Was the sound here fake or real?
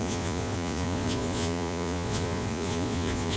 fake